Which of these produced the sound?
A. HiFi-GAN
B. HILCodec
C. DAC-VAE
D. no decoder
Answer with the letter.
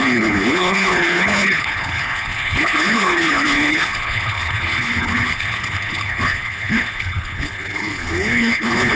B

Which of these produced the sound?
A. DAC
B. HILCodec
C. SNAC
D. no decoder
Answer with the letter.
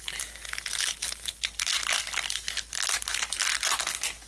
D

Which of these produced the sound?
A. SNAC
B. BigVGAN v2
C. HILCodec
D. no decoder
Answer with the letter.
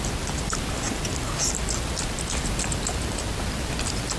D